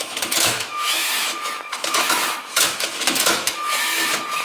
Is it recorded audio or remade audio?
remade